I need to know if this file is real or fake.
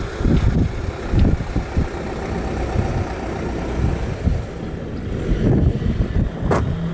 real